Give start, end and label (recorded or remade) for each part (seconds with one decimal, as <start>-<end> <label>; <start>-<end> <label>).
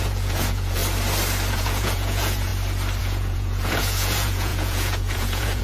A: 0.0-0.8 remade; 0.8-1.5 recorded; 1.5-2.5 remade; 2.5-3.0 recorded; 3.0-5.6 remade